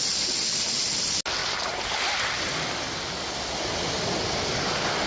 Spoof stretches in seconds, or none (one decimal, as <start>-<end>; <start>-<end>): none